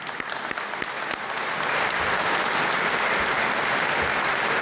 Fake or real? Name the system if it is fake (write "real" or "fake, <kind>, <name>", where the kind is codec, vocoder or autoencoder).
real